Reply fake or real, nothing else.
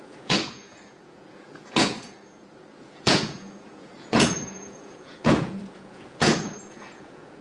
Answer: fake